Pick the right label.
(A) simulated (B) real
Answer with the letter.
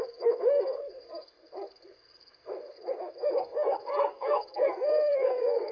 A